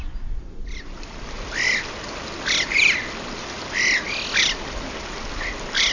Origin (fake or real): real